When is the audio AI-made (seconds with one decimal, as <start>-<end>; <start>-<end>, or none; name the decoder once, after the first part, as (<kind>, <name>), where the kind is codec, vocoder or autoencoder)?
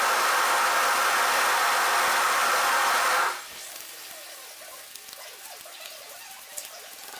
none